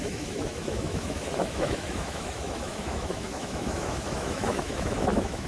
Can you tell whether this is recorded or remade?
remade